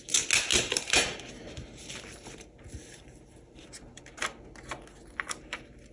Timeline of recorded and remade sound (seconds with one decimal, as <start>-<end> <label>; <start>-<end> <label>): 0.0-0.5 recorded; 0.5-4.0 remade; 4.0-5.9 recorded